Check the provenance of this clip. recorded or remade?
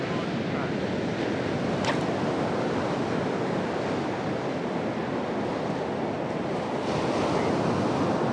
recorded